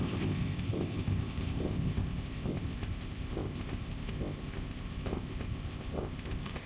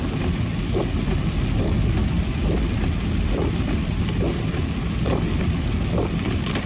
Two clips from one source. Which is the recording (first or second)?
second